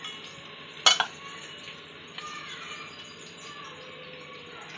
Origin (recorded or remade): recorded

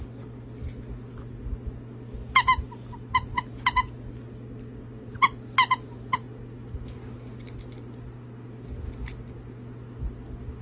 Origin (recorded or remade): recorded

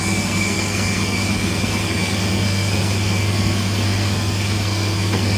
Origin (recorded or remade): remade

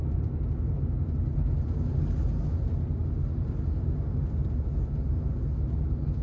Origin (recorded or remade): recorded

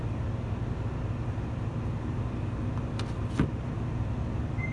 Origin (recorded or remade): recorded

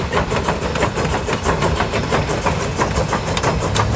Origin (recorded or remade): recorded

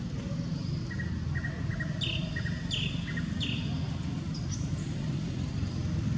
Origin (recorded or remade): recorded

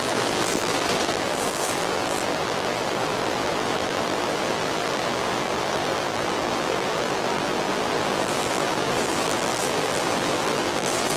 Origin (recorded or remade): remade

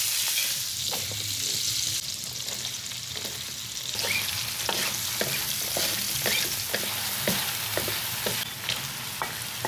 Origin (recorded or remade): recorded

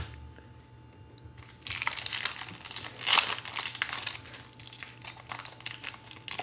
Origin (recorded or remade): recorded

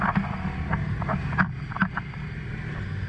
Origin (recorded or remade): recorded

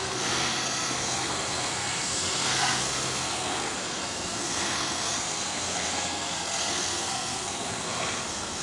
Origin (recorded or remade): remade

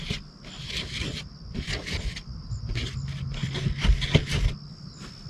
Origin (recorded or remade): recorded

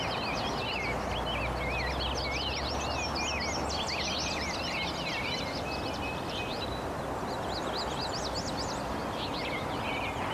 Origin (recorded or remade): recorded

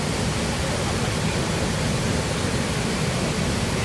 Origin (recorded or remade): recorded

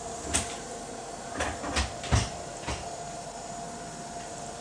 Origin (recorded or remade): recorded